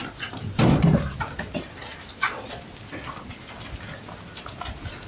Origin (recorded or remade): recorded